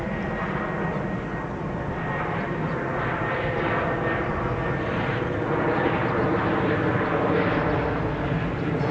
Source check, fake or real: real